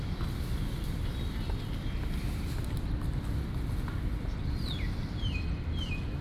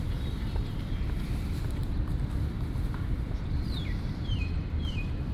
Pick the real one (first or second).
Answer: first